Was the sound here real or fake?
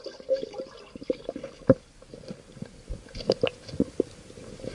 real